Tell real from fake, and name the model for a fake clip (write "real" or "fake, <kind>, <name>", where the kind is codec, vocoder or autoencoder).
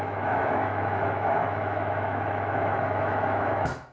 fake, autoencoder, DAC-VAE